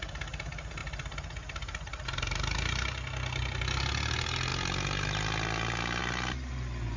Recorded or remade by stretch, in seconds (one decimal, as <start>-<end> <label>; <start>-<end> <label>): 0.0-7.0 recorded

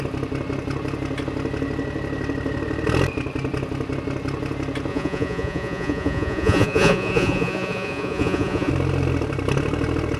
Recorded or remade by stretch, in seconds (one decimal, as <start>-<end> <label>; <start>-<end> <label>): 0.0-4.9 recorded; 4.9-8.7 remade; 8.7-10.2 recorded

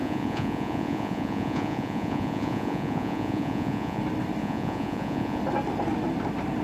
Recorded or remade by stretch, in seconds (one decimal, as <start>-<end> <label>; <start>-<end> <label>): 0.0-4.0 remade; 4.0-4.4 recorded; 4.4-5.4 remade; 5.4-6.6 recorded

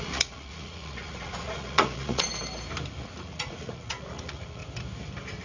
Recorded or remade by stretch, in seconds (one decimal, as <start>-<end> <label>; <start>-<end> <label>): 0.0-2.3 remade; 2.3-3.0 recorded; 3.0-4.6 remade; 4.6-5.4 recorded